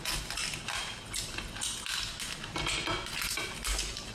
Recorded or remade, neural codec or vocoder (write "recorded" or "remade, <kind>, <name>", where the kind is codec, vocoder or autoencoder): recorded